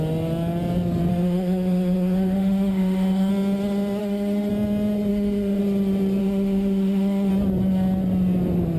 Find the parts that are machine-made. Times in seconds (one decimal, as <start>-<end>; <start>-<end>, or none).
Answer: 1.1-3.3; 4.0-4.5; 5.1-5.6; 6.2-7.3